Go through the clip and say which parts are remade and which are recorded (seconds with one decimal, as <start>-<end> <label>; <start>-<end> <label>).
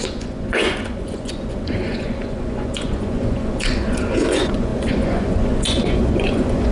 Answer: 0.0-6.7 remade